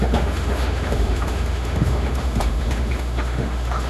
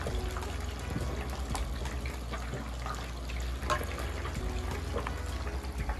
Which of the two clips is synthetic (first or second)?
first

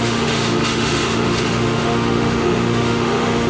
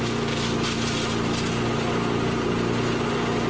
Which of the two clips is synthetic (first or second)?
first